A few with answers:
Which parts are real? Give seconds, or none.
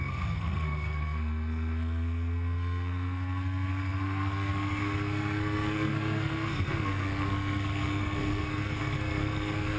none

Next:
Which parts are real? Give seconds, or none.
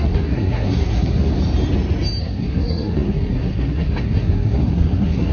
1.3-2.2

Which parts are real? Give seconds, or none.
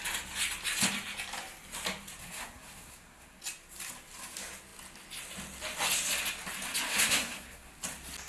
0.0-2.2; 3.4-6.9; 7.7-8.3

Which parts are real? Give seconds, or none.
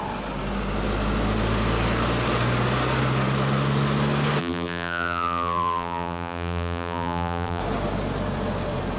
0.0-4.4; 7.6-9.0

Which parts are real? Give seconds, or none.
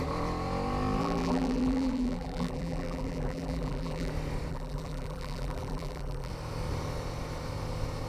0.0-1.0; 4.1-4.5; 6.3-8.1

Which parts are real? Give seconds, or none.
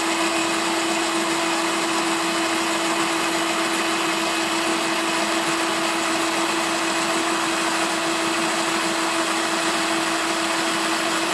0.0-11.3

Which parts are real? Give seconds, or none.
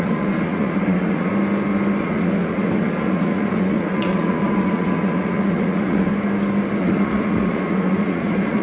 1.3-2.0; 6.1-6.8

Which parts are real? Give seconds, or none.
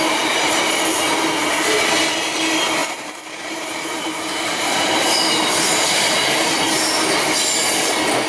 0.0-2.8; 6.7-8.3